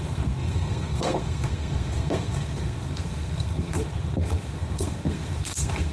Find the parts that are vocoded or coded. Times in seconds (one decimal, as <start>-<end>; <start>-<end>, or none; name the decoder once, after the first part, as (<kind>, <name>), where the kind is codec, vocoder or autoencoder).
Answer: 0.0-5.9 (codec, SNAC)